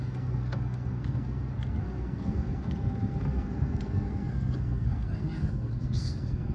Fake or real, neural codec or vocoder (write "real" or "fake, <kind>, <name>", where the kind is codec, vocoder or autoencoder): fake, codec, SNAC